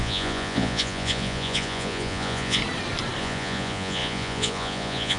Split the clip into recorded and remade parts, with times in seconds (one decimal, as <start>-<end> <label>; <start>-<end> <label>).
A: 0.0-2.6 remade; 2.6-3.2 recorded; 3.2-5.2 remade